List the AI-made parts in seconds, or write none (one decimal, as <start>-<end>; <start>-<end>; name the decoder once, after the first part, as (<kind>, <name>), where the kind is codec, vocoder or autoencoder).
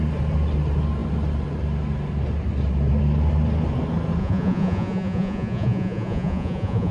4.2-6.9 (vocoder, Vocos)